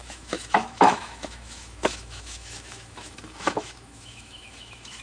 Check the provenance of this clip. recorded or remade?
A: remade